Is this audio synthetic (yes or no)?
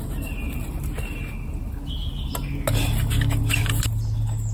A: no